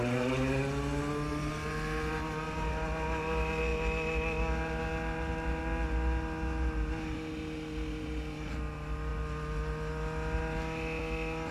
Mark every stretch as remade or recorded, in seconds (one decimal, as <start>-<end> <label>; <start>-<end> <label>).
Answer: 0.0-11.5 recorded